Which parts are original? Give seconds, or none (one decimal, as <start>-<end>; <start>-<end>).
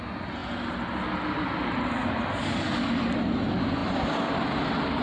0.0-5.0